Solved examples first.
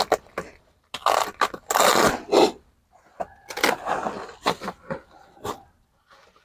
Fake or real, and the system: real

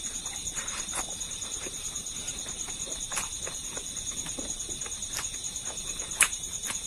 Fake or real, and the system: fake, vocoder, BigVGAN v2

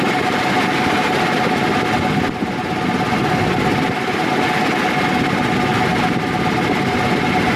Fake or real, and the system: real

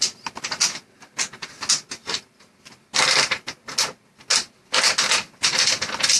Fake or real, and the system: real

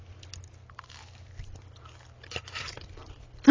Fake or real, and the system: real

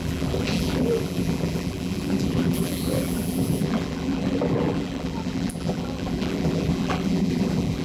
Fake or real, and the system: fake, vocoder, BigVGAN v2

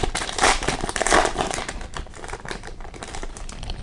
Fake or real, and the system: fake, vocoder, BigVGAN v2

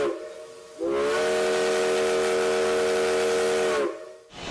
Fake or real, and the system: real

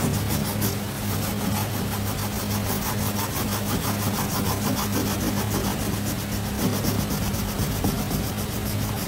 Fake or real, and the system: real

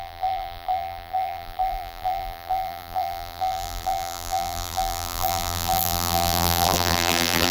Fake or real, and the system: fake, vocoder, BigVGAN v2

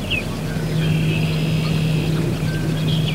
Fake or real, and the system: fake, vocoder, BigVGAN v2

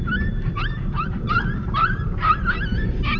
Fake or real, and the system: fake, vocoder, BigVGAN v2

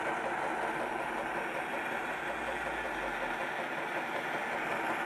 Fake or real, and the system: real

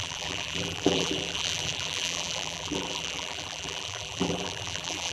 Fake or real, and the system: fake, vocoder, BigVGAN v2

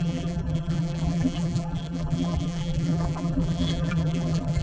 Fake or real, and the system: fake, vocoder, BigVGAN v2